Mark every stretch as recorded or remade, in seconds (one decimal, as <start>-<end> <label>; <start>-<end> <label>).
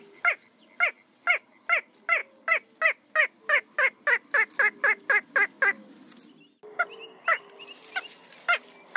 0.0-9.0 recorded